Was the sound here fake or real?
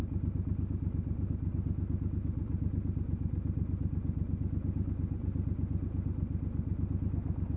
real